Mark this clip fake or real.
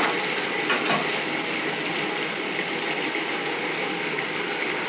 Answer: real